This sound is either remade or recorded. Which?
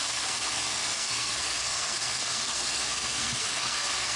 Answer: remade